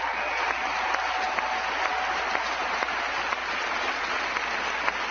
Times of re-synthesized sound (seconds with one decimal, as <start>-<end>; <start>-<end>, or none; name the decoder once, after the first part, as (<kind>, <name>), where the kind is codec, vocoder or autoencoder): 3.4-4.2 (vocoder, Vocos)